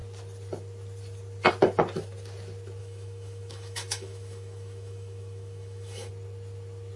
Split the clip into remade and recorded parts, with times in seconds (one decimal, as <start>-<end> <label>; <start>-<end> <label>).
0.0-2.8 recorded; 2.8-6.1 remade; 6.1-7.0 recorded